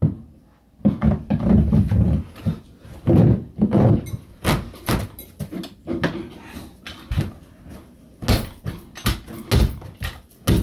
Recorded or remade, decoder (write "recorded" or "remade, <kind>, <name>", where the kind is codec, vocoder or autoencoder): recorded